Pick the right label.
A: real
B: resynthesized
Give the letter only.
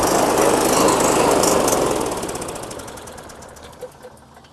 A